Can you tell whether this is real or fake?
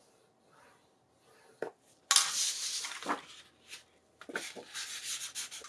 real